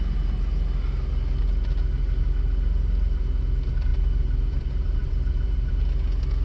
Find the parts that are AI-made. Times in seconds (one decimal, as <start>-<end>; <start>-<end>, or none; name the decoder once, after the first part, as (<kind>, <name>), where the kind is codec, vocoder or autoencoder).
3.9-5.7 (vocoder, BigVGAN v2)